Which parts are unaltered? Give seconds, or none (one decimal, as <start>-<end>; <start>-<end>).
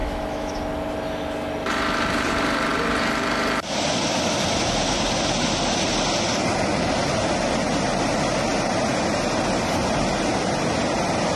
0.6-11.4